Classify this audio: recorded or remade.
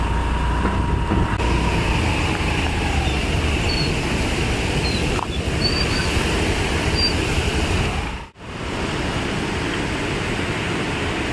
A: recorded